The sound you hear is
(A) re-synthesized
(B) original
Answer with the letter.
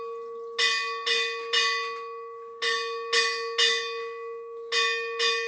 B